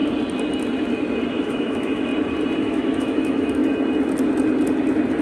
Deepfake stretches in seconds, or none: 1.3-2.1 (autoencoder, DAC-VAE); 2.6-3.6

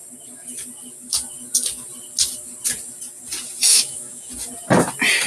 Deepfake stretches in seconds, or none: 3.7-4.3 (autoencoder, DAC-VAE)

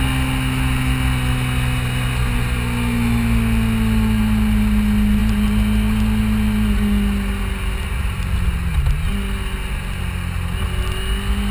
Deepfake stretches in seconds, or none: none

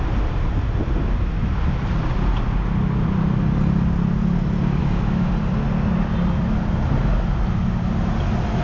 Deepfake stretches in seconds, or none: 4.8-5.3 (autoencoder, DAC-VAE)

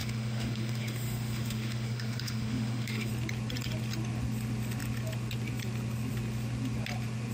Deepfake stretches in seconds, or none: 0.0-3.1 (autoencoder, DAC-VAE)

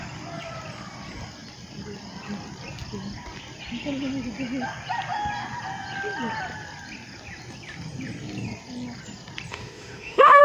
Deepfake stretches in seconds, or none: 9.5-10.4 (autoencoder, DAC-VAE)

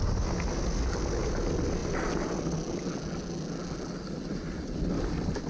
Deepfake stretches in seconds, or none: none